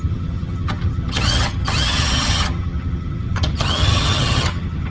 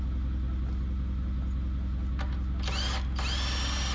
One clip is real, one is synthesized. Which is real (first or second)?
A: second